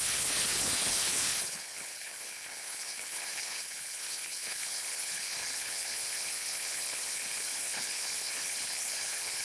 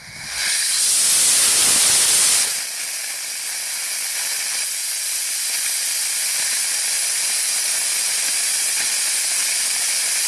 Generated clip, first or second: first